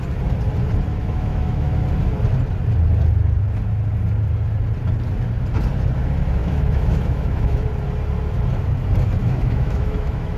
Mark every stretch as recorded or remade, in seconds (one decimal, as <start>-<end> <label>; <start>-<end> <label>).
0.0-1.0 recorded; 1.0-1.8 remade; 1.8-6.4 recorded; 6.4-7.7 remade; 7.7-9.2 recorded; 9.2-10.4 remade

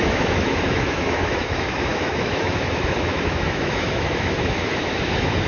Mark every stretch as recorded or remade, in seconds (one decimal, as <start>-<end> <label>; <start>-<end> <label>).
0.0-5.5 remade